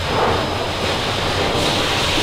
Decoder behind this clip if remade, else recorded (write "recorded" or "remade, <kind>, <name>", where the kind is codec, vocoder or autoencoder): recorded